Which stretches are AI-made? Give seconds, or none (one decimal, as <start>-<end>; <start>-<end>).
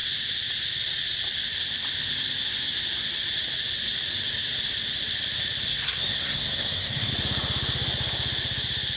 5.7-7.1